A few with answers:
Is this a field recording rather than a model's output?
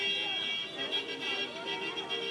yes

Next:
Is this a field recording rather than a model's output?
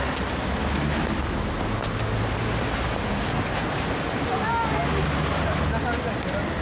yes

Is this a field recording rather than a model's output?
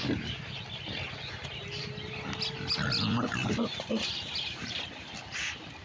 yes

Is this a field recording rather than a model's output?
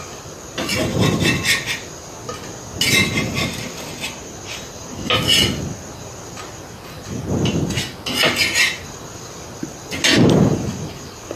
yes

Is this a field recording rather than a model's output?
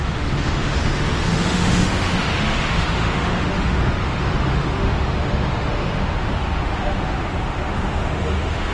no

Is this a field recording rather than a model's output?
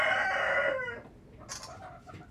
yes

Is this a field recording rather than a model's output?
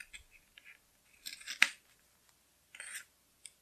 yes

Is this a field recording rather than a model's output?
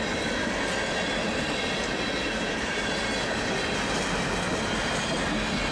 yes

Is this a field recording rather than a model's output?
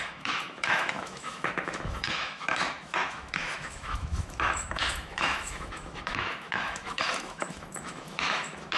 no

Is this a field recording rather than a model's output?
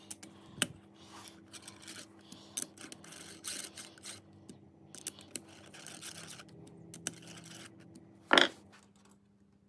yes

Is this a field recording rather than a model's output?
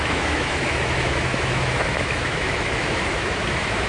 no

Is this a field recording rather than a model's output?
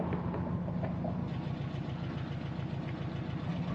yes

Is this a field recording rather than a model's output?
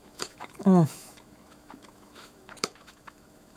no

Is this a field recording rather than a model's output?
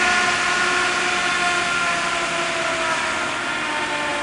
yes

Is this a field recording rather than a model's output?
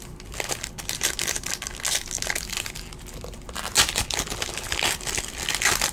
yes